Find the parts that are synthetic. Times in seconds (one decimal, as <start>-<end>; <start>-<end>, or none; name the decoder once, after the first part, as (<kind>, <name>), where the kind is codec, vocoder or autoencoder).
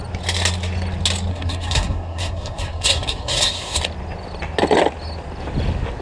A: 1.3-3.8 (codec, SNAC)